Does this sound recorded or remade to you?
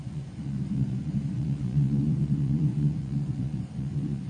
remade